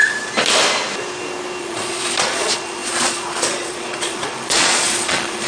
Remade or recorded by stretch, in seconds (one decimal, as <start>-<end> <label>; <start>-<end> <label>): 0.0-1.6 recorded; 1.6-5.5 remade